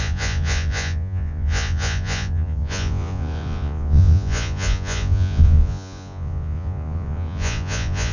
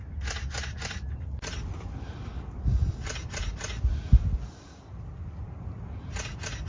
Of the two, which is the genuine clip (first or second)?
second